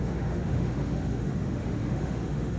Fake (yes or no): yes